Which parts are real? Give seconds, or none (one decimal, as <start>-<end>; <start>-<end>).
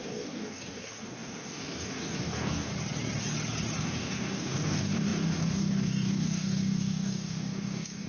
2.7-3.8